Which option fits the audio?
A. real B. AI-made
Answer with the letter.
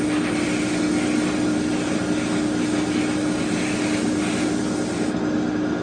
A